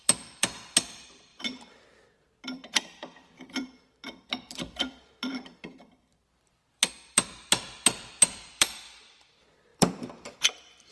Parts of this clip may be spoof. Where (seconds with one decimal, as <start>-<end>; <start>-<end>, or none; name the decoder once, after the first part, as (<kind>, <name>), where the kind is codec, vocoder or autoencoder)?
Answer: 0.0-1.3 (vocoder, BigVGAN v2); 2.4-10.9